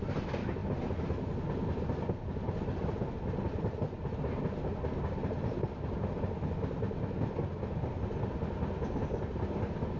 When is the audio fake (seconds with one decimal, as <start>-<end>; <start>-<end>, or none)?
none